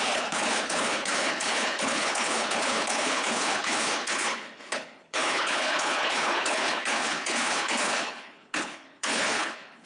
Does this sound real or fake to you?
fake